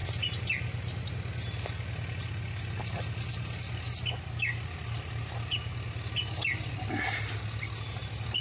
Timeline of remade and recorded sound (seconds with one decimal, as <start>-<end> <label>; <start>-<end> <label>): 0.0-8.4 recorded